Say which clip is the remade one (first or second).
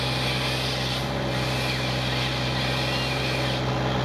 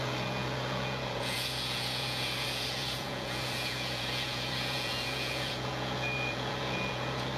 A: second